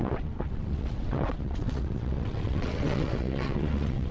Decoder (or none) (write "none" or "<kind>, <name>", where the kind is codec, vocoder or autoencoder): vocoder, WaveNeXt